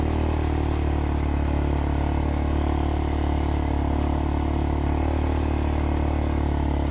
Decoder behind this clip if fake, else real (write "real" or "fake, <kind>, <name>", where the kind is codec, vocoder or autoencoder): real